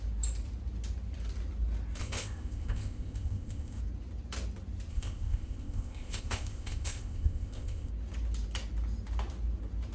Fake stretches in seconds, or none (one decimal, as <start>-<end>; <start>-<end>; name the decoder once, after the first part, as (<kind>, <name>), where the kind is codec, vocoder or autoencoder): 2.0-3.8 (codec, ZipCodec); 4.9-7.9